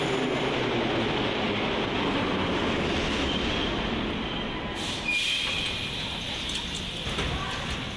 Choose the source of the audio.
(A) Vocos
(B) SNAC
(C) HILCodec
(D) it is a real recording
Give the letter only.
D